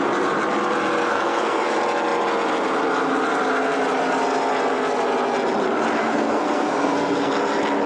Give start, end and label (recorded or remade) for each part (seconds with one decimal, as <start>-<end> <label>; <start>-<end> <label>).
0.0-1.1 recorded; 1.1-1.7 remade; 1.7-6.0 recorded; 6.0-7.3 remade; 7.3-7.9 recorded